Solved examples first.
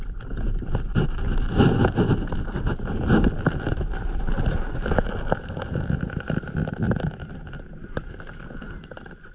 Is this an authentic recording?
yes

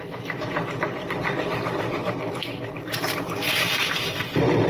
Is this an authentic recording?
no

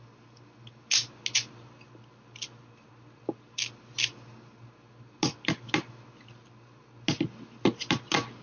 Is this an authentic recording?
yes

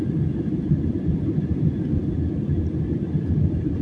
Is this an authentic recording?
yes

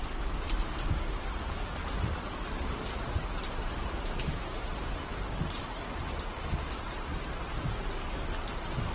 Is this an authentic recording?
yes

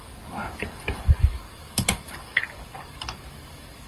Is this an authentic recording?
no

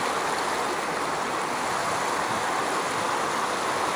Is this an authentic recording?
yes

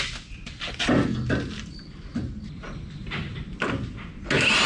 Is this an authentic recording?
yes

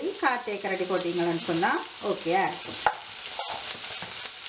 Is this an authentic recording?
yes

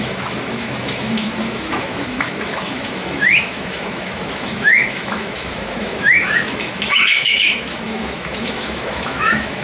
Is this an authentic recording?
no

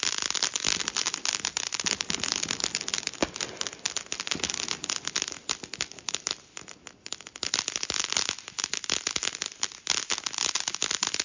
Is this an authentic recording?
yes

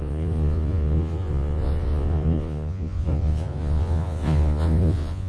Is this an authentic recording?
no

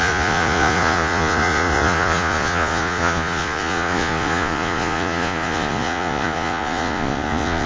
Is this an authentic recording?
no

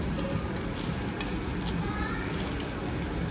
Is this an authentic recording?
yes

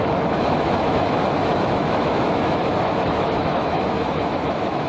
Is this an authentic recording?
no